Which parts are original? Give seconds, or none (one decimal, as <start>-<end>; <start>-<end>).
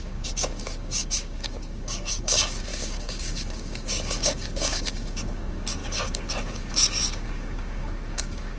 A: none